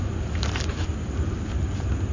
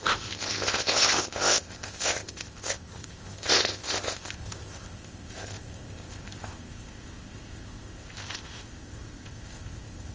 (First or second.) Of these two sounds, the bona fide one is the first